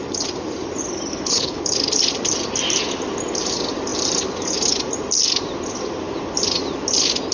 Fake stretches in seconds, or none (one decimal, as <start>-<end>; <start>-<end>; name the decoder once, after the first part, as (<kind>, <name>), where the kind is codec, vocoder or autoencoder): 1.1-1.6 (codec, HILCodec)